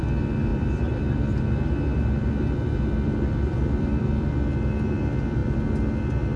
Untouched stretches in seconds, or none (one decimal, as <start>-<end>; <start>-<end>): 0.0-0.5; 4.3-6.4